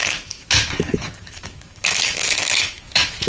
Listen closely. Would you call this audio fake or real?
fake